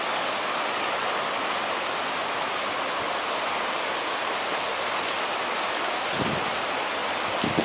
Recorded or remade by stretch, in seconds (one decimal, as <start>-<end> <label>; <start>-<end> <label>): 0.0-4.5 recorded; 4.5-5.2 remade; 5.2-7.0 recorded; 7.0-7.6 remade